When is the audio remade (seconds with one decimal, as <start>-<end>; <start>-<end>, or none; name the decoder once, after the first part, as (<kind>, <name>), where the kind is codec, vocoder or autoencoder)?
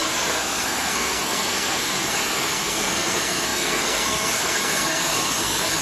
0.0-5.8 (codec, SNAC)